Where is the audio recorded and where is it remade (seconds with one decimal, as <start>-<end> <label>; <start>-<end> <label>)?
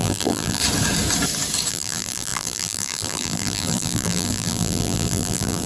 0.0-0.6 remade; 0.6-1.7 recorded; 1.7-5.7 remade